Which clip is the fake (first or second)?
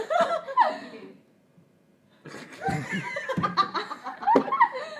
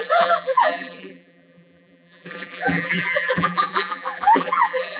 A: second